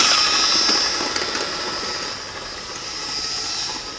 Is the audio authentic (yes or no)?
yes